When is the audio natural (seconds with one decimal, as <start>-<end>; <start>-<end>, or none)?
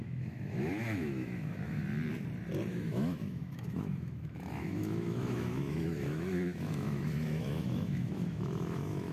1.8-2.7